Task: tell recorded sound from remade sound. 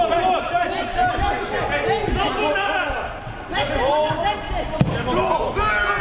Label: recorded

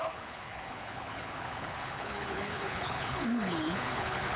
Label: remade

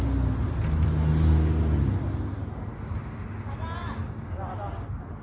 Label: recorded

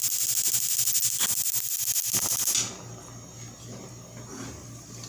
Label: recorded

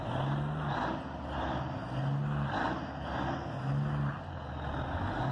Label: recorded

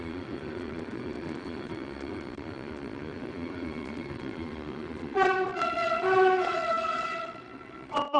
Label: remade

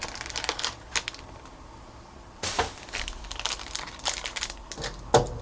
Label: recorded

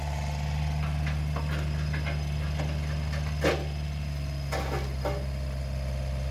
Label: recorded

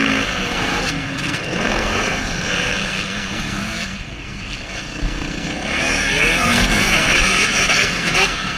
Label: remade